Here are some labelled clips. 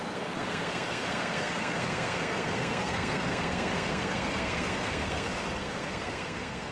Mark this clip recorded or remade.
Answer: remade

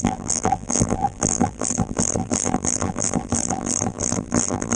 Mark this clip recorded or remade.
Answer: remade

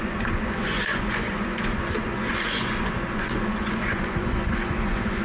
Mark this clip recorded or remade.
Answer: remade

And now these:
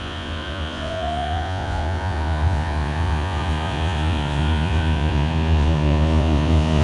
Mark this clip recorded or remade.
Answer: remade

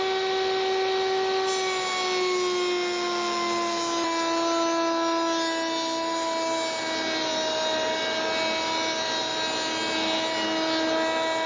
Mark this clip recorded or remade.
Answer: recorded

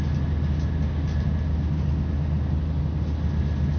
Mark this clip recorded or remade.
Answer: recorded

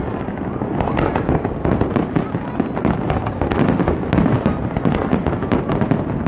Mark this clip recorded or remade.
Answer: recorded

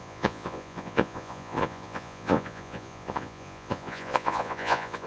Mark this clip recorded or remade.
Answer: remade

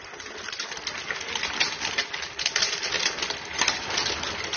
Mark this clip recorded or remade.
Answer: recorded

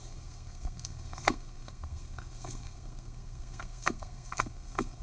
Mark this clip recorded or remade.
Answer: remade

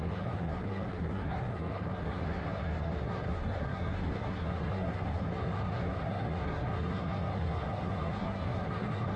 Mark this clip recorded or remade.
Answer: remade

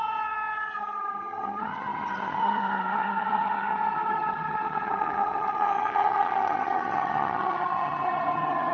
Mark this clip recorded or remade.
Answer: remade